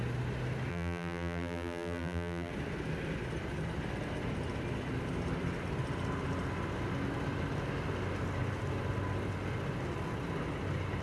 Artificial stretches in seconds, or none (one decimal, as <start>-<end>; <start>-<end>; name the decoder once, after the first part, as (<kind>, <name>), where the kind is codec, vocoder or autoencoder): 0.7-2.5 (vocoder, BigVGAN v2)